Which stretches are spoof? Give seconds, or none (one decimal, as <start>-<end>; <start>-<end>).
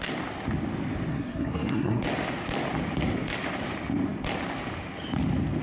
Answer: 1.1-2.0